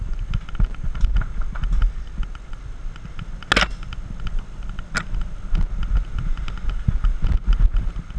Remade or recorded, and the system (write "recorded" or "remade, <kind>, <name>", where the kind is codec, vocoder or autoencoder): recorded